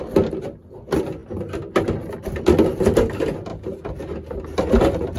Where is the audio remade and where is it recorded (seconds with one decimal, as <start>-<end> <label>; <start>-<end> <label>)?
0.0-5.2 recorded